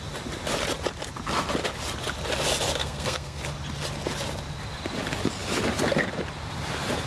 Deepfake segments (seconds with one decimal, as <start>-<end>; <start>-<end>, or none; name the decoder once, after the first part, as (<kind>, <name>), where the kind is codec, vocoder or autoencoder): 2.8-3.4 (codec, SNAC)